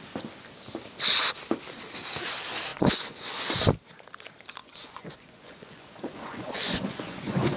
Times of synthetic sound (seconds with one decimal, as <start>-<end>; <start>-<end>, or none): 2.7-3.4; 4.6-7.6